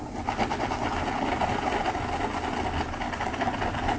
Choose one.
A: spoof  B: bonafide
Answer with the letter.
B